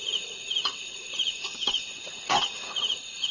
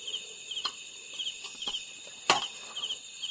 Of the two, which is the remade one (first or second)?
first